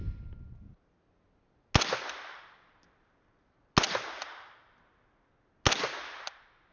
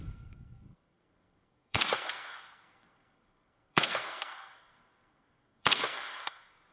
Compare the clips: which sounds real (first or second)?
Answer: first